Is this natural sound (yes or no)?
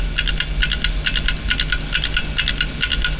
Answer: yes